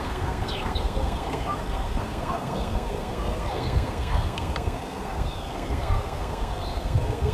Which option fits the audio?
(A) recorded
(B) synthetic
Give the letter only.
B